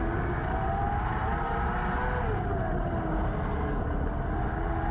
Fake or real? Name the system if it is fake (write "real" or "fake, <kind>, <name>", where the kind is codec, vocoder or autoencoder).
real